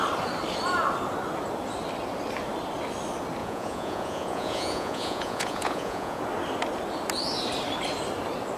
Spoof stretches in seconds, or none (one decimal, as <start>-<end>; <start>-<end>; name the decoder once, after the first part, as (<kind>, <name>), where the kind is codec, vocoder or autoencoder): 3.4-6.2 (vocoder, Vocos)